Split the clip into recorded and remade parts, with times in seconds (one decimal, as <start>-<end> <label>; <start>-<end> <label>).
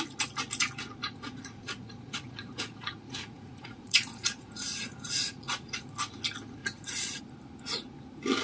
0.0-1.0 recorded; 1.0-5.9 remade; 5.9-6.6 recorded; 6.6-7.2 remade; 7.2-8.4 recorded